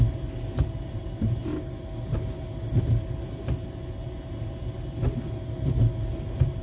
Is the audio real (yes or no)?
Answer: yes